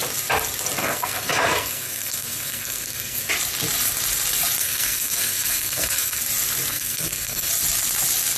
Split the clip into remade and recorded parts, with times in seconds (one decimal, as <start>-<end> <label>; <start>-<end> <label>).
0.0-0.8 recorded; 0.8-3.3 remade; 3.3-4.6 recorded; 4.6-6.2 remade; 6.2-6.7 recorded; 6.7-7.5 remade; 7.5-8.4 recorded